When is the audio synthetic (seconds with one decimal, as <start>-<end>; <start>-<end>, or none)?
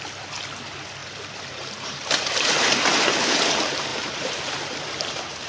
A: 1.0-3.4; 3.9-5.5